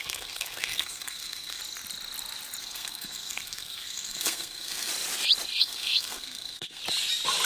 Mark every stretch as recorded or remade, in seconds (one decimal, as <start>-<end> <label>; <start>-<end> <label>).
0.0-1.6 remade; 1.6-2.6 recorded; 2.6-4.9 remade; 4.9-5.6 recorded; 5.6-6.8 remade; 6.8-7.5 recorded